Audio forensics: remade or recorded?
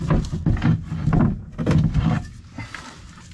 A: recorded